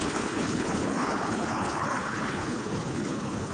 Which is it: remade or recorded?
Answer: remade